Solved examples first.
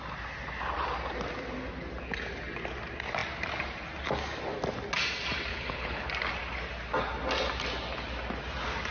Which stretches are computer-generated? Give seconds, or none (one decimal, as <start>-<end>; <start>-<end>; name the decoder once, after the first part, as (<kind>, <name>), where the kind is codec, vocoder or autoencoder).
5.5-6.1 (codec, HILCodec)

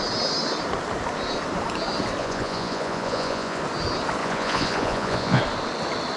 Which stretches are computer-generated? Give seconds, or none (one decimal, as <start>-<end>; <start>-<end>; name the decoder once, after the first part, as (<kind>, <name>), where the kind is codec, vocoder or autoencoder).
2.2-3.6 (vocoder, Vocos); 4.2-5.4

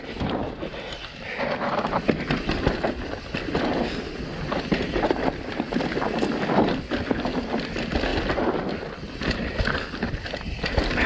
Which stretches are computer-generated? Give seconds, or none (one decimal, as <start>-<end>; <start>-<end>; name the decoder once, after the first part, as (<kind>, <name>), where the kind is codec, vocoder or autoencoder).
none

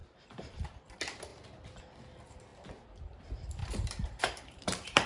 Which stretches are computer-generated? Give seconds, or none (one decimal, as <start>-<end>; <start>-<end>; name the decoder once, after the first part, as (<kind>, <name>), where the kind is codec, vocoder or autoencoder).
0.0-0.8 (vocoder, BigVGAN v2); 3.6-5.1